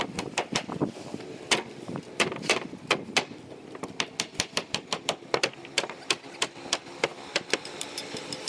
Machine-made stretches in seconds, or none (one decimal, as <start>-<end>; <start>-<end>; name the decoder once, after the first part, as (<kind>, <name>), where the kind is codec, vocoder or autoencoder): none